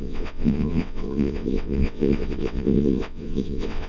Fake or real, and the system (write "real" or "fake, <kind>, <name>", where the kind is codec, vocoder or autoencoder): fake, vocoder, WaveNeXt